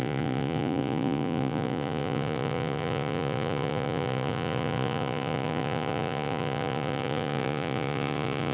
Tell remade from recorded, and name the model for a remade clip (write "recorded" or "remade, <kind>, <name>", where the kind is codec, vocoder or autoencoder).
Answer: remade, vocoder, Vocos